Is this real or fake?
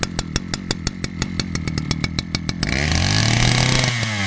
real